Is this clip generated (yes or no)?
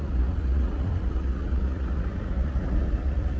yes